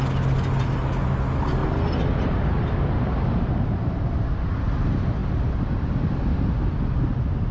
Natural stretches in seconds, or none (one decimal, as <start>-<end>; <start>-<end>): 0.0-7.5